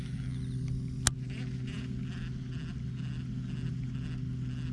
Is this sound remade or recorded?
recorded